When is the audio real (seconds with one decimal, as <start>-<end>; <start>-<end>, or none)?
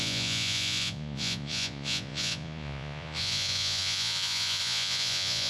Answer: none